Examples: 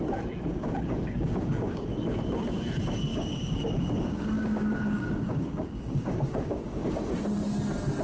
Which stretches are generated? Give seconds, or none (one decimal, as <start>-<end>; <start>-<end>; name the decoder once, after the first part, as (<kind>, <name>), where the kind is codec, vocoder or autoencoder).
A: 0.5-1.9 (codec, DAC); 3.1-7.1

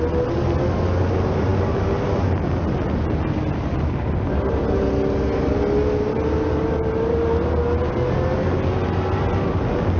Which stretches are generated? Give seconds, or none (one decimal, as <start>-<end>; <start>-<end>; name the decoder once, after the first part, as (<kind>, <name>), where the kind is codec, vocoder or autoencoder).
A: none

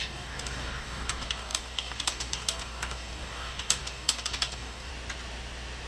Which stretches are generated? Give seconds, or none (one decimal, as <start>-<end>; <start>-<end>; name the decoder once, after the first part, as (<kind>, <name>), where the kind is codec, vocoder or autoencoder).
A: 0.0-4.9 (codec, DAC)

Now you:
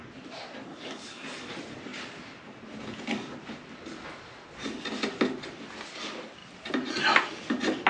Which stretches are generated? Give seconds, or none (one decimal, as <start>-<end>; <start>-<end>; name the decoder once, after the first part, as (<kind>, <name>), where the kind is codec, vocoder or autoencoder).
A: 0.7-1.5 (codec, DAC)

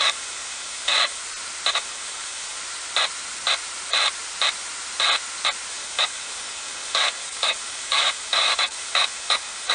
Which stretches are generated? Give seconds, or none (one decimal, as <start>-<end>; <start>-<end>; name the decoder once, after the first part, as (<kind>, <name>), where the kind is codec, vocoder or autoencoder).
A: 0.0-1.2 (codec, DAC); 1.7-2.6; 5.7-9.7

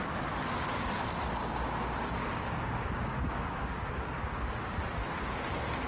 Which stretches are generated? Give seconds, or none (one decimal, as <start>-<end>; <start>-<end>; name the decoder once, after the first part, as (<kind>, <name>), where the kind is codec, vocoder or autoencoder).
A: 1.4-4.8 (codec, DAC)

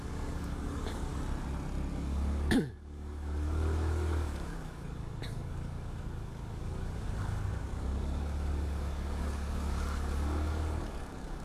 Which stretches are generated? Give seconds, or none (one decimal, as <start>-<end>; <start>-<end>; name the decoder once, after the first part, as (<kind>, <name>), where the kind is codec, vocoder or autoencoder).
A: 0.0-1.1 (codec, DAC); 1.9-11.4

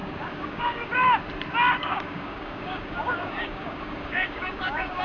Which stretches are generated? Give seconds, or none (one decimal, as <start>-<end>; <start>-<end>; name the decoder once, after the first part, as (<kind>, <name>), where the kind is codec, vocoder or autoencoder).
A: 0.0-0.9 (codec, DAC); 1.8-5.0